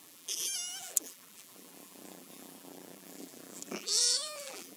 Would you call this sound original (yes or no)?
no